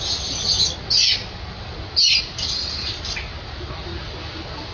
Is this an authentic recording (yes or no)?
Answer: yes